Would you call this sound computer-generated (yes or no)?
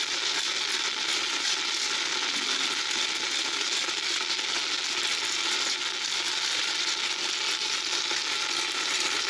no